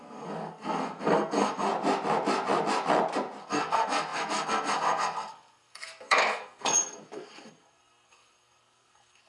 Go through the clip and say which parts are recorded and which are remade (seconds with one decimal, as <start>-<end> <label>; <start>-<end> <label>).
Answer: 0.0-1.7 remade; 1.7-3.4 recorded; 3.4-9.3 remade